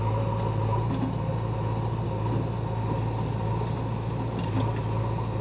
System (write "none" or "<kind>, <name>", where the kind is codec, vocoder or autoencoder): none